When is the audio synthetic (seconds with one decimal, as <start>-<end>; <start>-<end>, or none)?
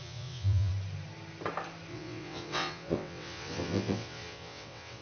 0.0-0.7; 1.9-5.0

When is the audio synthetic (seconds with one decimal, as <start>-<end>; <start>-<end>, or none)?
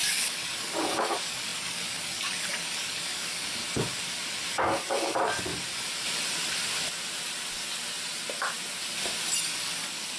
0.0-3.6; 4.5-5.5; 9.4-10.2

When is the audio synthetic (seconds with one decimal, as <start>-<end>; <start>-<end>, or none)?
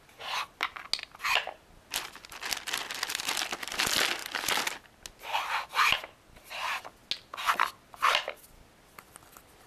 none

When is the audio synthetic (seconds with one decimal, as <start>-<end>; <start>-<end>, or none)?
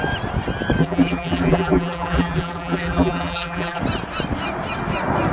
0.8-3.8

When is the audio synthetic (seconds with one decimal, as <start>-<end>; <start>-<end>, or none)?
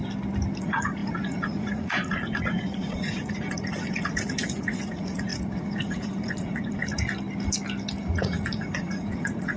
0.6-7.0; 8.0-9.6